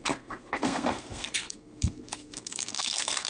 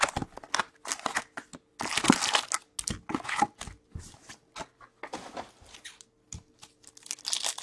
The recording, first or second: second